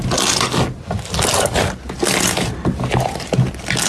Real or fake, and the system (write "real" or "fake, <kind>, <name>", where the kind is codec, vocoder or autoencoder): real